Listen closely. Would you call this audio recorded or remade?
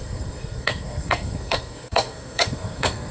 remade